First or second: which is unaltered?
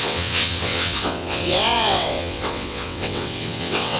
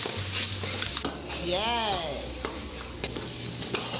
second